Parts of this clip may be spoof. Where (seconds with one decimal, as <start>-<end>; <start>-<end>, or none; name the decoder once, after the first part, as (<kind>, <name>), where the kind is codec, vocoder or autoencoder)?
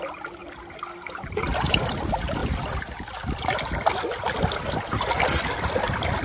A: none